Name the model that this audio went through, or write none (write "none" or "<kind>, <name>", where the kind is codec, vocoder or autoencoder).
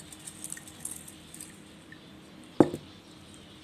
none